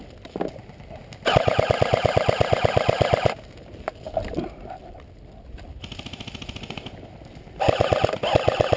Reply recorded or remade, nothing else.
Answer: recorded